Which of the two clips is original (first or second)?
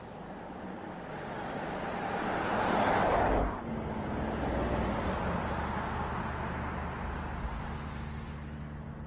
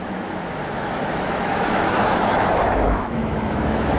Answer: first